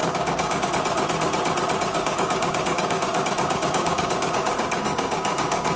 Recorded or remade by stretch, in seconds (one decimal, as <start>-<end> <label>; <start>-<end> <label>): 0.0-0.7 remade; 0.7-1.9 recorded; 1.9-5.8 remade